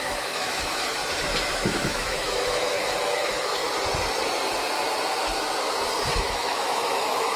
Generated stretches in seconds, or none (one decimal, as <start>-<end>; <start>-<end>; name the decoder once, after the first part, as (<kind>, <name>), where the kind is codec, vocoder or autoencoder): 0.0-1.0 (autoencoder, DAC-VAE); 1.5-3.6; 6.1-7.4